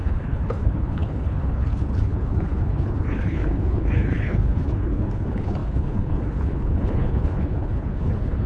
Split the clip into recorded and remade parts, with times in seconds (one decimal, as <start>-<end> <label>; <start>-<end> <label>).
0.0-8.5 remade